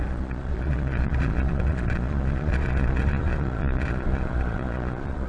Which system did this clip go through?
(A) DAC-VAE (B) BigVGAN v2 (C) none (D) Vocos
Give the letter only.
D